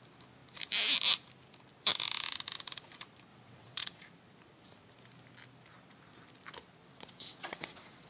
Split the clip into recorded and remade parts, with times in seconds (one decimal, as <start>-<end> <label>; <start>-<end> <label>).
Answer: 0.0-3.3 recorded; 3.3-4.0 remade; 4.0-6.8 recorded; 6.8-8.1 remade